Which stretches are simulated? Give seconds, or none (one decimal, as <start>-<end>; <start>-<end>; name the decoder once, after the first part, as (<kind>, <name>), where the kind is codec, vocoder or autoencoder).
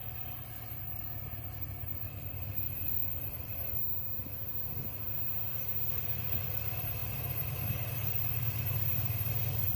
0.0-3.8 (vocoder, BigVGAN v2); 5.9-9.8